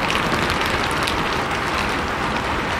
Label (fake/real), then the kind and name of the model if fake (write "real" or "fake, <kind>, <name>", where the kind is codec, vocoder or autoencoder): fake, vocoder, BigVGAN v2